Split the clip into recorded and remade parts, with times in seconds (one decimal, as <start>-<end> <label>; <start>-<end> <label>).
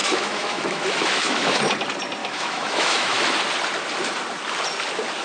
0.0-1.6 remade; 1.6-2.2 recorded; 2.2-3.2 remade; 3.2-5.2 recorded